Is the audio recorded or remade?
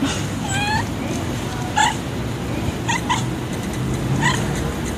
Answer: remade